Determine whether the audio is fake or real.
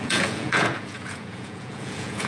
fake